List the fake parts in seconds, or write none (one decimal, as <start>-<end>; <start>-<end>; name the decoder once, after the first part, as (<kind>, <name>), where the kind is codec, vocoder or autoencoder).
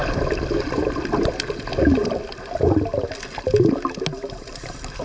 0.0-1.3 (vocoder, BigVGAN v2)